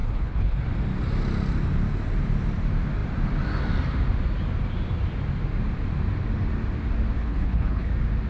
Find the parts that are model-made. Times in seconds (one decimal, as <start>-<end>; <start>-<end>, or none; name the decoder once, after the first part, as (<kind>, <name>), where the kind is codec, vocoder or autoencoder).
0.0-0.6 (codec, HILCodec); 7.2-7.9